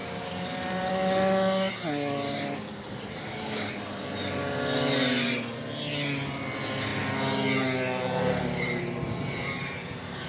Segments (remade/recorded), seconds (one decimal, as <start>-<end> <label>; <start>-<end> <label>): 0.0-10.3 recorded